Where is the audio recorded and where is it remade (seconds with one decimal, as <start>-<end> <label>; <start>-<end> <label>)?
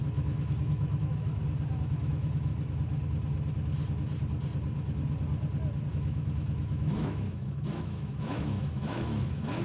0.0-1.4 remade; 1.4-1.9 recorded; 1.9-2.5 remade; 2.5-5.9 recorded; 5.9-9.6 remade